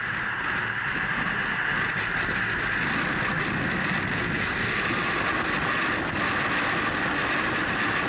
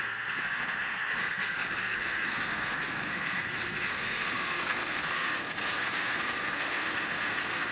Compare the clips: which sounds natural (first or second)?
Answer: first